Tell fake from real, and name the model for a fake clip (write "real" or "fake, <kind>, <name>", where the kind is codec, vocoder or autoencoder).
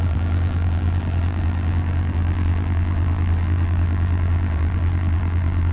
fake, vocoder, BigVGAN v2